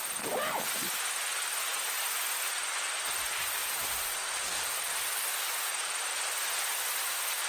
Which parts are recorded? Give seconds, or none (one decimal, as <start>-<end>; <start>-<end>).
0.0-7.5